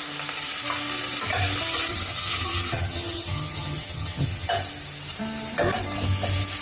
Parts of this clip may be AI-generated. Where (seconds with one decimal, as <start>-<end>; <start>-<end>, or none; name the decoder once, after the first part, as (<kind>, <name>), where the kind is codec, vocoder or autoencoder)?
1.9-4.5 (vocoder, HiFi-GAN)